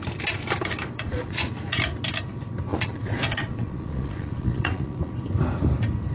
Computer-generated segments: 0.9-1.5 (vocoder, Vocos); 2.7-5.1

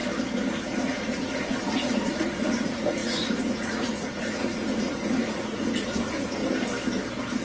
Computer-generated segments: 0.5-6.4 (vocoder, Vocos)